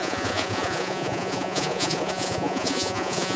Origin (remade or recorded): remade